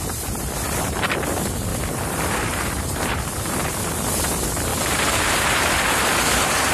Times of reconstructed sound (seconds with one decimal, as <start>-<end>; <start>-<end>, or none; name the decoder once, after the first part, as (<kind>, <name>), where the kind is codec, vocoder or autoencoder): 1.7-3.9 (vocoder, BigVGAN v2); 4.7-6.7